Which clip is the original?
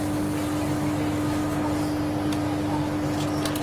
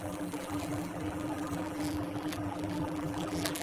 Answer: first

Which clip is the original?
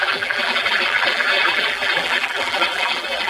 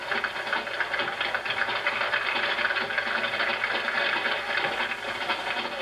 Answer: second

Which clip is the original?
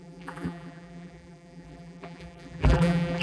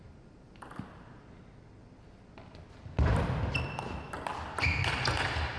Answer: second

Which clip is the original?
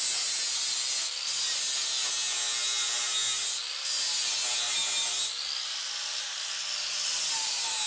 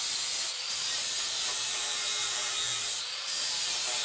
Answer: first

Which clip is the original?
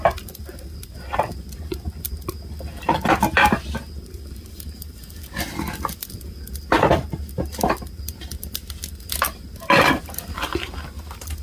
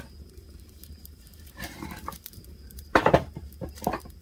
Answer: first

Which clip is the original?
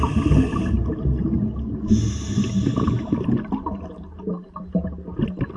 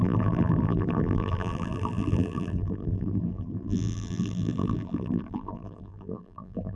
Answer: first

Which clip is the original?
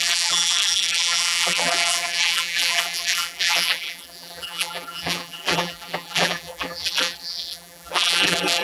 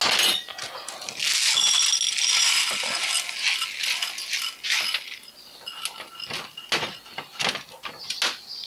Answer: second